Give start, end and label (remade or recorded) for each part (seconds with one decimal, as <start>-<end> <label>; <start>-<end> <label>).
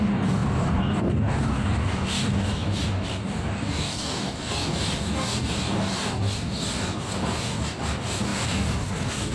0.0-9.3 remade